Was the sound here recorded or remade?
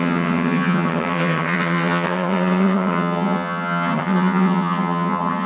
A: remade